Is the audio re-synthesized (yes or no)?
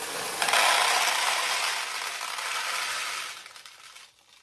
no